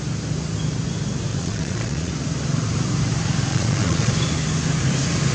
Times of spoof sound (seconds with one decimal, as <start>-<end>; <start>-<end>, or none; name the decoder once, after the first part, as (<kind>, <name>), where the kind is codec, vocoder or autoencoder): 1.3-2.1 (vocoder, Vocos); 3.5-4.1